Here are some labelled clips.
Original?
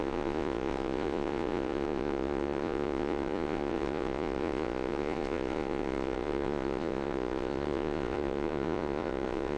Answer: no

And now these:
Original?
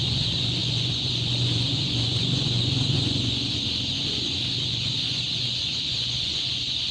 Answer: no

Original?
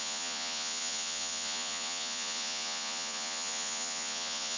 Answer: no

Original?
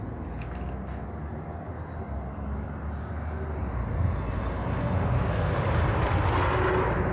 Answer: yes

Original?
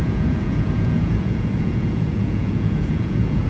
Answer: no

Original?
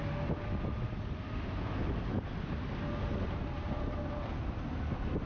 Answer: yes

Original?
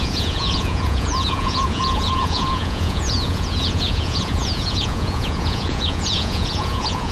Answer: no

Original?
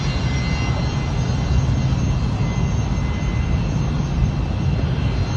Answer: yes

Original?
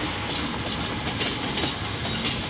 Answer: yes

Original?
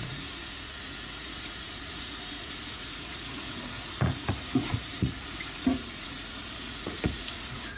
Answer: no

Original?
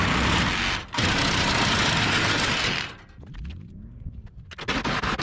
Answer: yes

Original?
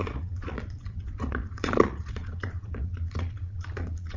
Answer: no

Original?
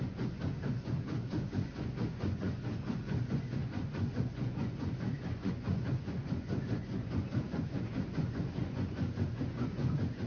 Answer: no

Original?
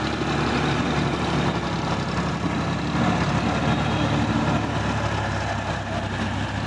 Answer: yes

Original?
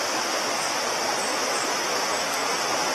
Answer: yes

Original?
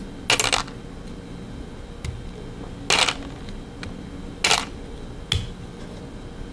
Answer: yes